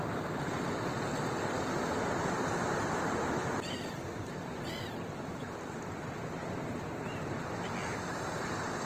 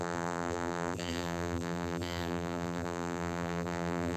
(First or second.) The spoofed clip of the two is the second